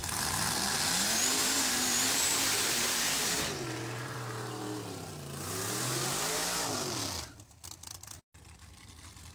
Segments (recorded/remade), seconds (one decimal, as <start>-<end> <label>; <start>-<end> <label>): 0.0-1.0 recorded; 1.0-6.4 remade; 6.4-9.3 recorded